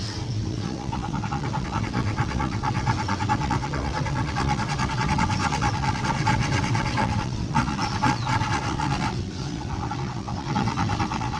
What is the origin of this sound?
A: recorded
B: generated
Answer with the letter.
B